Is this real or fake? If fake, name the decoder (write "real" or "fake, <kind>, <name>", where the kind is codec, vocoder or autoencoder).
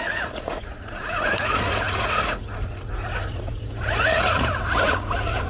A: fake, vocoder, Vocos